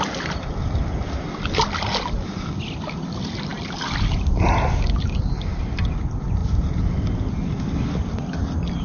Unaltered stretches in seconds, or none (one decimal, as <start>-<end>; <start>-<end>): 0.0-8.8